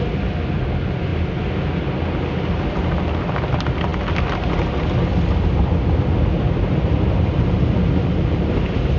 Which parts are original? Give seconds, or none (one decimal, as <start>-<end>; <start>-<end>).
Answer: 0.0-9.0